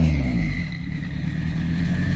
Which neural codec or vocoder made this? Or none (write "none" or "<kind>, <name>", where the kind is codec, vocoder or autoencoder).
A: codec, HILCodec